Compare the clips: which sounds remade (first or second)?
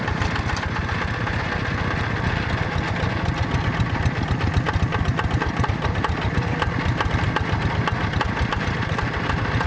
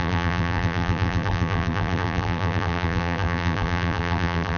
second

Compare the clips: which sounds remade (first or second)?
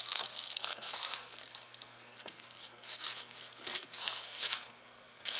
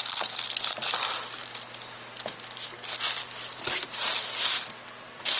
first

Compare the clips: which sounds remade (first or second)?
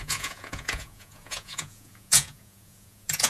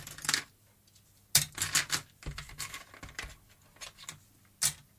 first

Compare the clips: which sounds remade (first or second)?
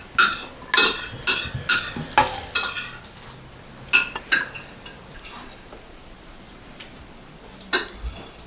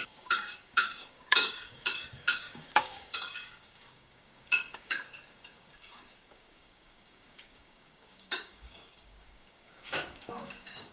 second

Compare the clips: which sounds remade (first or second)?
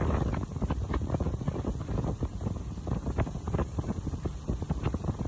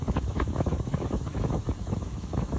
second